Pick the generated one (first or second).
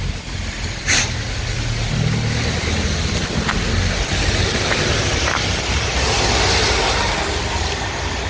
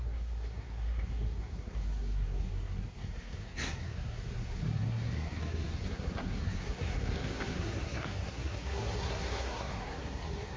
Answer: second